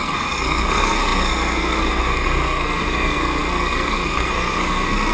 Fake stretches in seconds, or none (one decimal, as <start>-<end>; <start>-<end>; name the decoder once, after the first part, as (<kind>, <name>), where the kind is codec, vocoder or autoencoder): 0.0-5.1 (codec, SNAC)